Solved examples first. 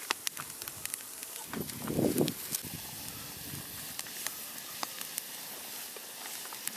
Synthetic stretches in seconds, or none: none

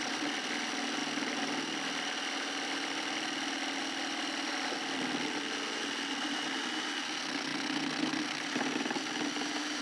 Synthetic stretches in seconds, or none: none